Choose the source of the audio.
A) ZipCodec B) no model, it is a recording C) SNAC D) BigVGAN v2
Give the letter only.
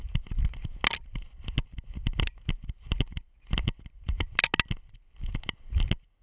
B